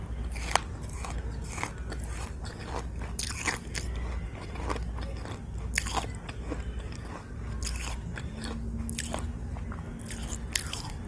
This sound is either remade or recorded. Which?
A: recorded